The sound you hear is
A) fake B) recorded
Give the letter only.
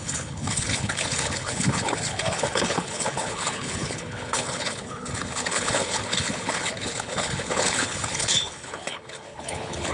A